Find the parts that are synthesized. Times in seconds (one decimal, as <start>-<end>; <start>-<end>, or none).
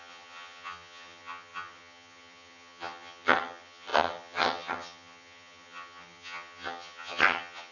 0.0-7.7